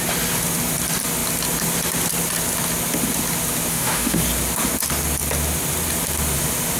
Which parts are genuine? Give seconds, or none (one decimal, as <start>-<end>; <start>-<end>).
0.0-3.7; 4.2-6.8